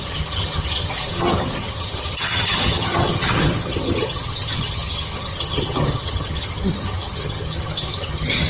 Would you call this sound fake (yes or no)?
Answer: yes